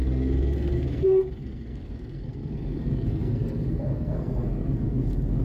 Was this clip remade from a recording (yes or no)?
yes